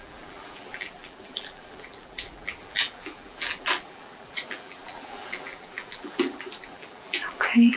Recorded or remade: remade